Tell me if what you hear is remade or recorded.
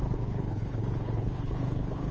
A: remade